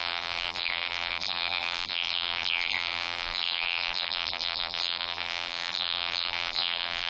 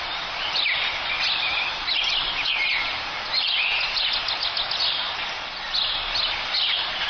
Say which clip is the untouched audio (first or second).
second